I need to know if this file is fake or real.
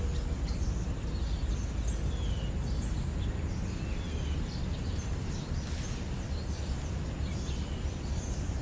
real